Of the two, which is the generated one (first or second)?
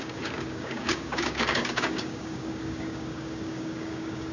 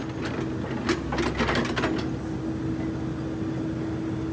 first